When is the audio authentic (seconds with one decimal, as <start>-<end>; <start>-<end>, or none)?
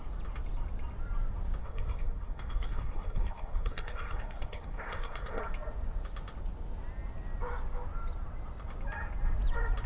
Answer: 0.0-1.6; 5.4-9.9